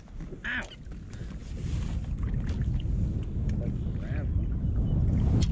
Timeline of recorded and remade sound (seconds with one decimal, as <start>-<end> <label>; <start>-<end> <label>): 0.0-5.5 recorded